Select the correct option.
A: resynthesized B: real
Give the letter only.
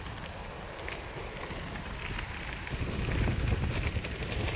B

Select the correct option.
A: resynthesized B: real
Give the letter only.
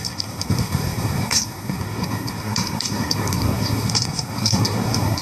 A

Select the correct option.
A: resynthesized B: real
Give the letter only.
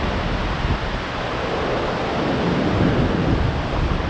B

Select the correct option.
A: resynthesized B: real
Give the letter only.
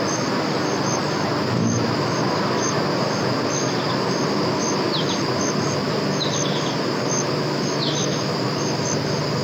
B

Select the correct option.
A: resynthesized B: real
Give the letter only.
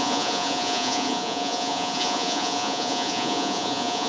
A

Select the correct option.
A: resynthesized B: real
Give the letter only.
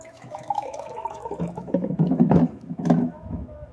A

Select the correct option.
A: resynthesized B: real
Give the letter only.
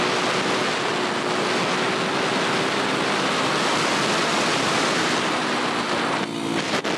B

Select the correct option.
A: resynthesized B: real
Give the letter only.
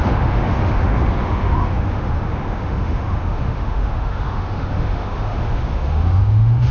A